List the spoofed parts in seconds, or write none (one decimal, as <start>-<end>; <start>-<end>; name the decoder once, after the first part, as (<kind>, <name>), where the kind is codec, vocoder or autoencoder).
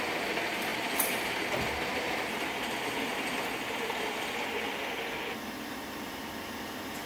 none